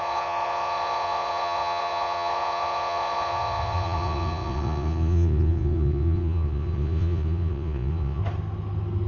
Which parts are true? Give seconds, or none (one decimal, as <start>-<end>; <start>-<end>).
8.2-9.1